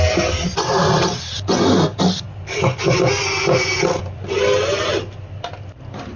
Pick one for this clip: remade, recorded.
recorded